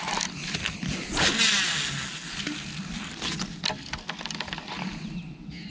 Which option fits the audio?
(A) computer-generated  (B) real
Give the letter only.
B